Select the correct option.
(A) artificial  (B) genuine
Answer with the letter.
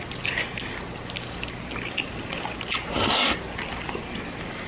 B